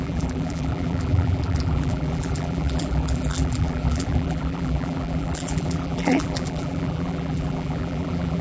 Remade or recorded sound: remade